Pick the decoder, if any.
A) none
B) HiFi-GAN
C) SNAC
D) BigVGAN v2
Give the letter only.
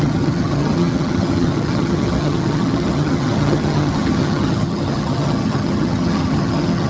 B